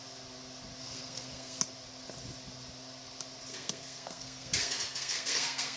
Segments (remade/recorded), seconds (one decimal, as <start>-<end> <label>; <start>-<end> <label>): 0.0-0.8 recorded; 0.8-1.6 remade; 1.6-3.5 recorded; 3.5-5.8 remade